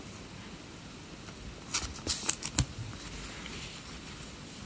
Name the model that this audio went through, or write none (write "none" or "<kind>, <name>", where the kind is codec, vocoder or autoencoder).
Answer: none